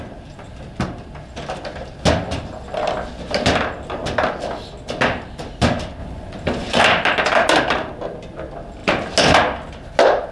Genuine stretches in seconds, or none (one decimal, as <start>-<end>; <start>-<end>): 0.0-6.0; 6.8-10.3

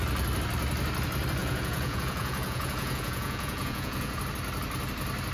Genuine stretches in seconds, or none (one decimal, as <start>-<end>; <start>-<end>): 0.0-1.4; 4.2-5.3

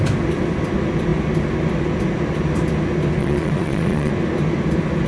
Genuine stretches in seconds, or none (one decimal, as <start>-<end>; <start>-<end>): 0.0-3.2; 4.1-5.1

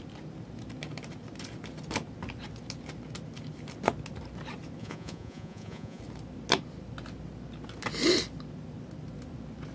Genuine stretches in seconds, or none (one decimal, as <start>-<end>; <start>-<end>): 0.0-4.8; 6.0-9.7

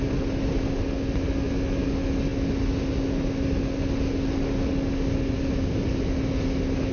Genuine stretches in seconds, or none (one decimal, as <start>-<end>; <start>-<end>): 0.0-6.9

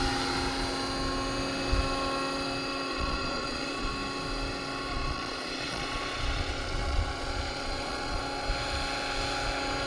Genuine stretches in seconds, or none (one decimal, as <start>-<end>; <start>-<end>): 0.0-2.9; 3.9-4.9; 8.2-9.9

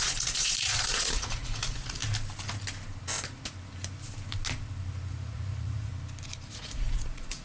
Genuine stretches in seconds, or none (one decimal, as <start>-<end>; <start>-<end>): 2.0-5.1; 5.9-6.5